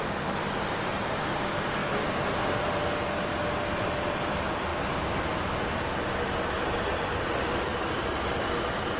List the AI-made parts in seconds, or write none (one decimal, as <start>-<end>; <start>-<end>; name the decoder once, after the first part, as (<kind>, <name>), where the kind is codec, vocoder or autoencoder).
1.8-2.4 (vocoder, BigVGAN v2); 7.7-9.0